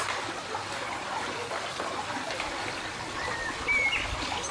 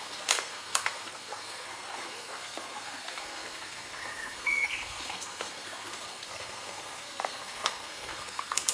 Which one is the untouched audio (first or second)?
first